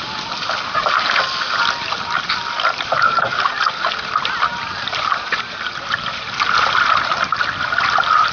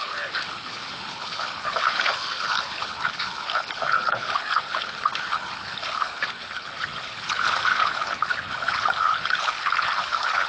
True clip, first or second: first